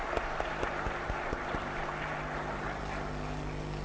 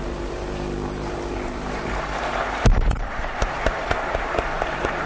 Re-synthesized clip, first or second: second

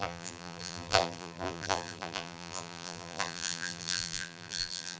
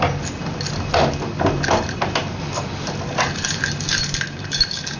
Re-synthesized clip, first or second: first